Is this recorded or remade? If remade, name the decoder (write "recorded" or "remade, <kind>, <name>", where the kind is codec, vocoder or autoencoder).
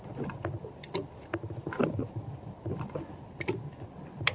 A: recorded